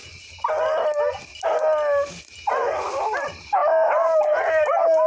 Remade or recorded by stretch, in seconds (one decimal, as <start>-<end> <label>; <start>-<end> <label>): 0.0-3.0 recorded; 3.0-3.6 remade; 3.6-4.2 recorded; 4.2-5.1 remade